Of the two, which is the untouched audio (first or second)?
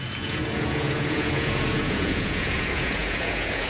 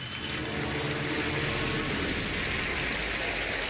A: second